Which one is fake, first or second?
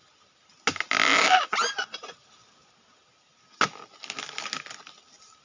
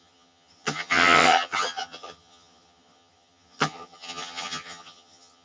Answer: second